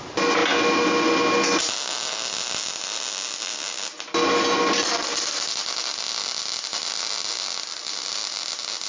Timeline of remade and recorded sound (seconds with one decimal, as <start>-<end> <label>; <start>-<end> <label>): 0.0-7.8 recorded; 7.8-8.5 remade; 8.5-8.9 recorded